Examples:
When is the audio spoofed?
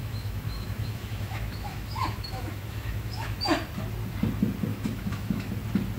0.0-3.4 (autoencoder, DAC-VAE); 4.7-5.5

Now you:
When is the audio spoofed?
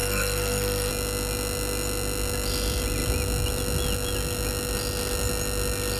0.0-0.9 (codec, SNAC)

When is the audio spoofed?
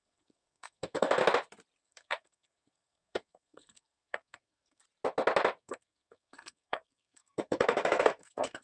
0.0-1.2 (codec, SNAC); 1.8-4.8; 5.6-8.6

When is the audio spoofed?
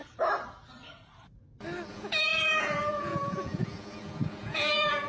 1.9-5.1 (vocoder, Vocos)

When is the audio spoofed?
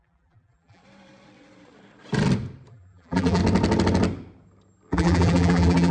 0.0-0.8 (vocoder, BigVGAN v2); 2.7-3.4; 4.9-5.9